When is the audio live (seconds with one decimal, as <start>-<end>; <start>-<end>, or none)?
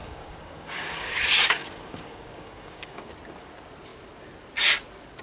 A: 3.1-5.2